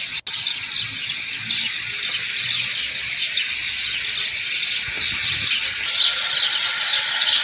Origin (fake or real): real